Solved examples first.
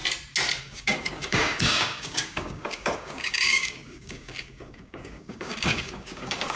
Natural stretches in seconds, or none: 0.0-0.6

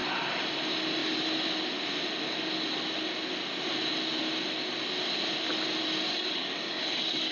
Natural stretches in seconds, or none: 0.0-6.1

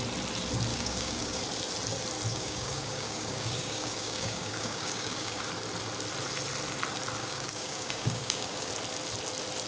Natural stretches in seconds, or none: 0.0-0.7; 1.4-2.3; 5.4-7.2; 8.7-9.7

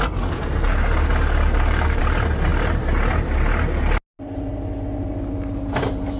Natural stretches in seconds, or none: 0.0-0.7; 2.0-6.2